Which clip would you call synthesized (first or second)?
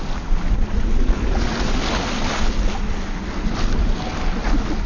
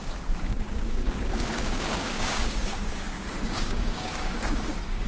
second